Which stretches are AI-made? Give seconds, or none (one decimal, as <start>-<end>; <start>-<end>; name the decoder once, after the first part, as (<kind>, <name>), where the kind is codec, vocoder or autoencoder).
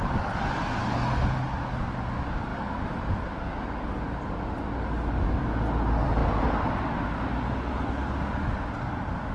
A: none